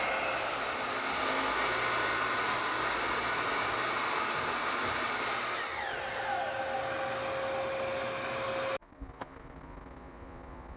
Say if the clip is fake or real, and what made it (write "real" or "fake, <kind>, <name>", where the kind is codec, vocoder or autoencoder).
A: real